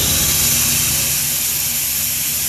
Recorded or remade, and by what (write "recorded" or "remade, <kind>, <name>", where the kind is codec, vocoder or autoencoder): recorded